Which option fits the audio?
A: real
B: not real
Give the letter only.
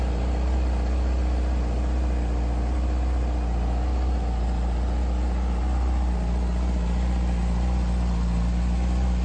A